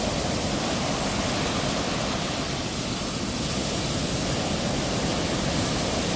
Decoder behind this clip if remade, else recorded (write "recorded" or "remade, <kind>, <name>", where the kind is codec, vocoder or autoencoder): recorded